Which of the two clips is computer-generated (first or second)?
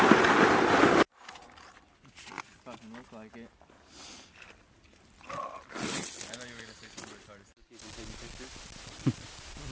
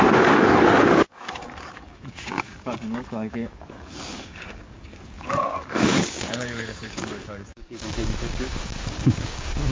second